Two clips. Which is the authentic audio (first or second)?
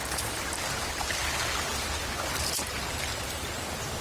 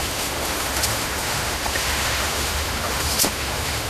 first